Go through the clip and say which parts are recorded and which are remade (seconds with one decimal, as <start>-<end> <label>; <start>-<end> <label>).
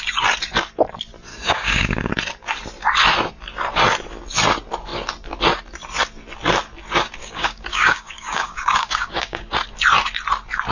0.0-1.3 recorded; 1.3-2.1 remade; 2.1-7.2 recorded; 7.2-9.5 remade; 9.5-10.7 recorded